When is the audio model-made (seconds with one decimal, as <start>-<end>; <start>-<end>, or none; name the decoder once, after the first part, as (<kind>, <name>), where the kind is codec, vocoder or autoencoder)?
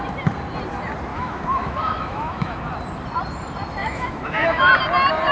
1.1-2.7 (autoencoder, DAC-VAE); 3.8-4.7